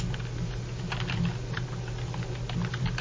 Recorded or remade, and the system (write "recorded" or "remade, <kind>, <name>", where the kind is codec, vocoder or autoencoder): recorded